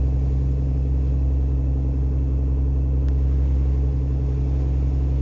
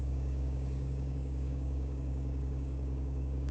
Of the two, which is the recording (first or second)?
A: first